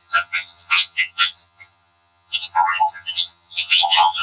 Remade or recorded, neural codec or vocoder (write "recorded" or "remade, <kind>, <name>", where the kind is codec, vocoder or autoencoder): remade, vocoder, HiFi-GAN